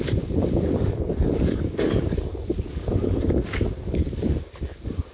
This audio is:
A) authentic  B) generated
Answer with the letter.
B